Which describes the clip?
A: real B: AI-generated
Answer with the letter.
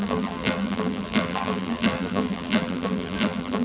B